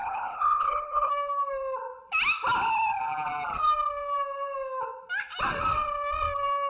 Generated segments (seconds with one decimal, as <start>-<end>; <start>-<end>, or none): 0.0-1.1